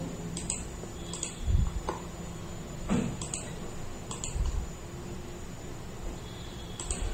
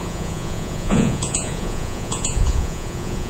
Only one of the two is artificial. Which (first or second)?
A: second